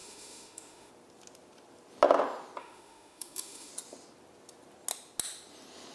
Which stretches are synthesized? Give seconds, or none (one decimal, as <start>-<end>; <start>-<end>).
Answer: 0.0-0.9; 2.6-3.7